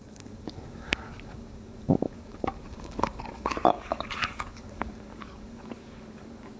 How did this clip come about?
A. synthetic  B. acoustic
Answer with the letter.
A